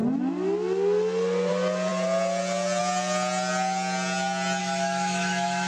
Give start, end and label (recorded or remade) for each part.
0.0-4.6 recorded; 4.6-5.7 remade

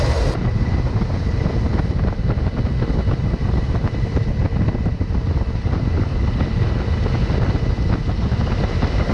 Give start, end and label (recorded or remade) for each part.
0.0-9.1 recorded

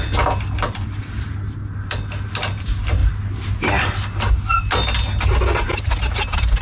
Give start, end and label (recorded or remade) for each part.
0.0-6.6 recorded

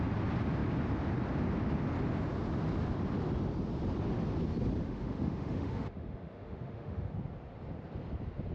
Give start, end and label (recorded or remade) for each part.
0.0-4.8 recorded; 4.8-7.1 remade; 7.1-8.5 recorded

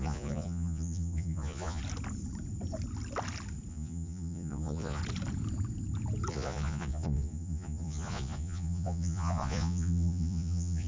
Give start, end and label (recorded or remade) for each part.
0.0-1.8 remade; 1.8-3.7 recorded; 3.7-5.0 remade; 5.0-6.3 recorded; 6.3-10.9 remade

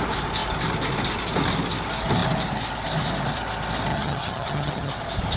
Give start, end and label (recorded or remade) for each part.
0.0-3.9 recorded; 3.9-4.9 remade; 4.9-5.4 recorded